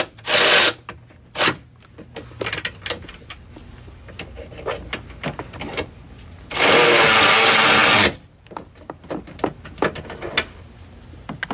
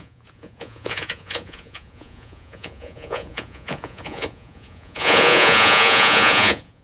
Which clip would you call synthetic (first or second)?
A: second